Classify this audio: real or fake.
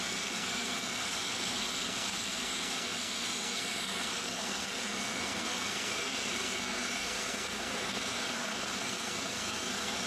fake